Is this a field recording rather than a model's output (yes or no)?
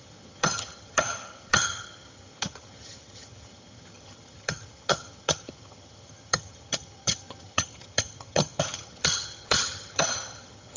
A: no